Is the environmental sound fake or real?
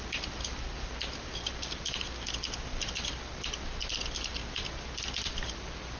real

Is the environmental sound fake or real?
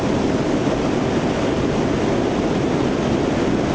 real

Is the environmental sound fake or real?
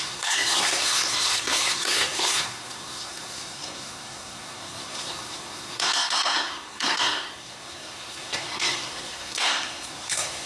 fake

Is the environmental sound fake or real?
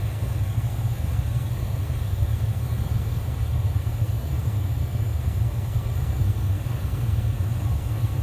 fake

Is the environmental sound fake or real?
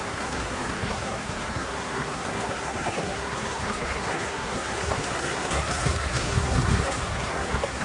fake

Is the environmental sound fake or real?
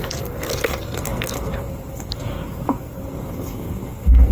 fake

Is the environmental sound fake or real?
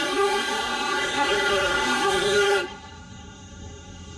fake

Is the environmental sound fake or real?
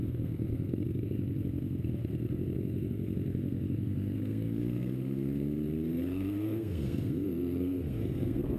fake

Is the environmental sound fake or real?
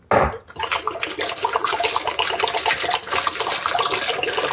real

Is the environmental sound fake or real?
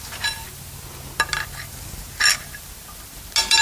real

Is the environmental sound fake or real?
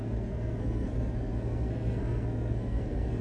fake